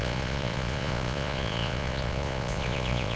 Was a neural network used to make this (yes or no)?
yes